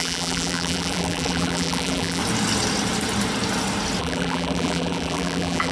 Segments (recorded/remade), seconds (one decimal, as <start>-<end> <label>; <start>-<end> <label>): 0.0-2.2 remade; 2.2-4.0 recorded; 4.0-5.7 remade